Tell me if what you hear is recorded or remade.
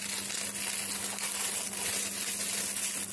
recorded